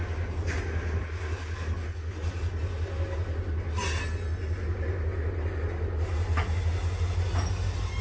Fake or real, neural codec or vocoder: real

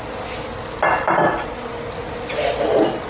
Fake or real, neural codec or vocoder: real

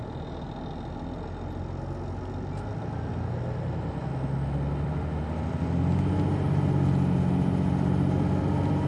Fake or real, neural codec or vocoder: real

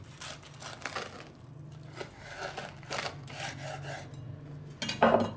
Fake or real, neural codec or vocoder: real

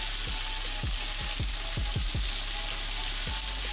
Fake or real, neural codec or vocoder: real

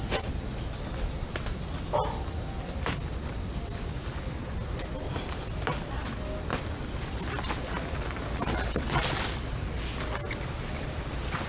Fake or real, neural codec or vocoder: real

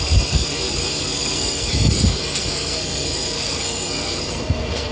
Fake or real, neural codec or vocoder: fake, codec, SNAC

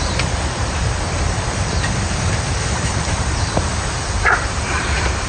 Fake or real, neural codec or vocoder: fake, vocoder, BigVGAN v2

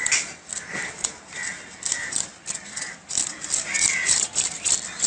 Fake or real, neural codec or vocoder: real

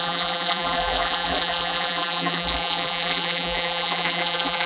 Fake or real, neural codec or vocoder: fake, vocoder, BigVGAN v2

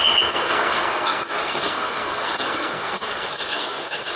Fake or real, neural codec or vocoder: fake, codec, SNAC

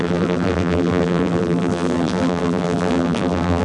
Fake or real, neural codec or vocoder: fake, vocoder, BigVGAN v2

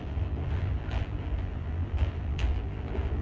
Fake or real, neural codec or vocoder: fake, vocoder, BigVGAN v2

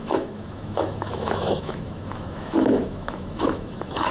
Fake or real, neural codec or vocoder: fake, autoencoder, DAC-VAE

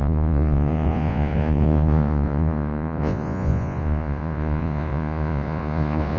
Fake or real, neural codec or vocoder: fake, vocoder, Vocos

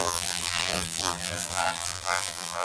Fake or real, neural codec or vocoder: fake, vocoder, BigVGAN v2